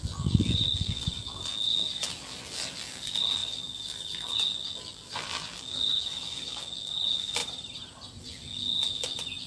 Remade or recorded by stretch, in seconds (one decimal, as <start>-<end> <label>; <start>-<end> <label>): 0.0-7.4 remade; 7.4-8.2 recorded; 8.2-9.5 remade